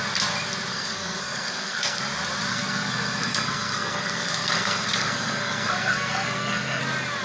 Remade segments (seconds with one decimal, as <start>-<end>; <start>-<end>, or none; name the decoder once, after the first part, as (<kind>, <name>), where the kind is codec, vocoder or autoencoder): 0.7-2.0 (codec, SNAC); 2.5-6.8